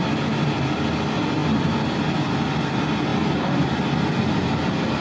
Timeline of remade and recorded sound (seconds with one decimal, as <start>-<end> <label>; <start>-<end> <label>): 0.0-5.0 recorded